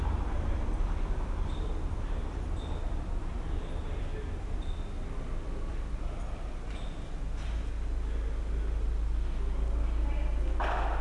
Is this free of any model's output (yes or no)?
yes